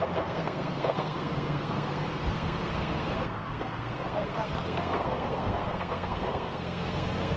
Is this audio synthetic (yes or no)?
yes